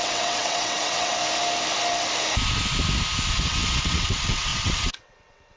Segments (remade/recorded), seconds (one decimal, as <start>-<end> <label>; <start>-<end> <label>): 0.0-1.2 remade; 1.2-3.3 recorded; 3.3-5.6 remade